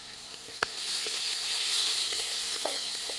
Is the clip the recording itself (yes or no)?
no